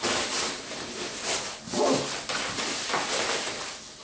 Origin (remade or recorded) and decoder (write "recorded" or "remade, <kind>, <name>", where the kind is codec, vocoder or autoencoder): recorded